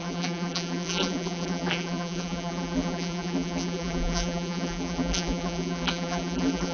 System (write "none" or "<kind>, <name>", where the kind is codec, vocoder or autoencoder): vocoder, BigVGAN v2